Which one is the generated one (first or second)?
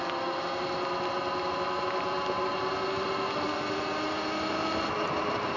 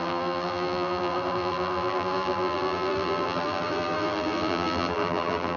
second